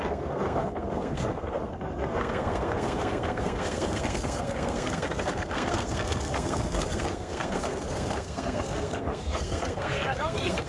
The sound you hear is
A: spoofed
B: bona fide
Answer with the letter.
A